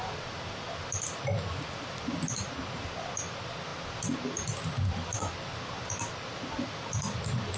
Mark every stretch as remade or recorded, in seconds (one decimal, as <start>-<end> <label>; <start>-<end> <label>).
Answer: 0.0-7.6 recorded